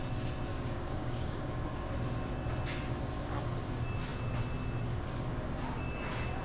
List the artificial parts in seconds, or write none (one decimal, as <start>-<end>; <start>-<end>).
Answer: 0.5-1.5